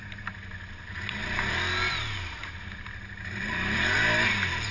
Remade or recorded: recorded